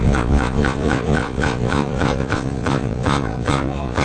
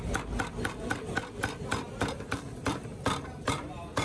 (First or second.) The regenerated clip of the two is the first